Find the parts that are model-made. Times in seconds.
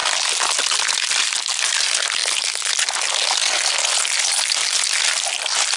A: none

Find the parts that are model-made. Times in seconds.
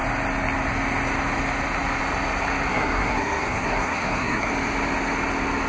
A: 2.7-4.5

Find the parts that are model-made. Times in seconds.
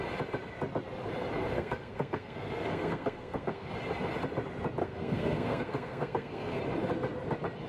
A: 1.4-3.7; 4.8-6.6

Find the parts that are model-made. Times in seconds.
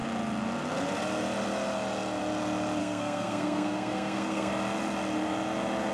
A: 2.8-4.5